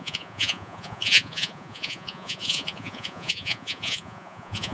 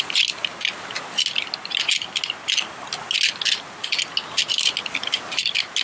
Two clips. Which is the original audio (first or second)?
second